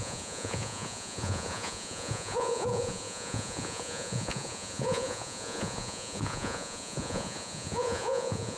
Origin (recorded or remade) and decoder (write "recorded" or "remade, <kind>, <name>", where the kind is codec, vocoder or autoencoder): remade, vocoder, Vocos